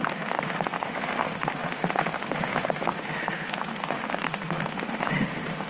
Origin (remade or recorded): remade